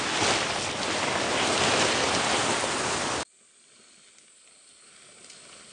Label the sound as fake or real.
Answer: real